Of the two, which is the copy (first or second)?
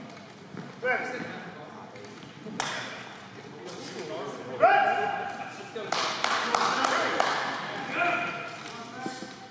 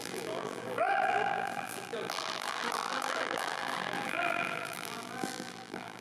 second